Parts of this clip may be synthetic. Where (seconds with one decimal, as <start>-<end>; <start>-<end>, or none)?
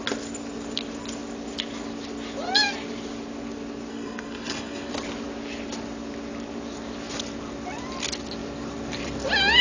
3.9-4.9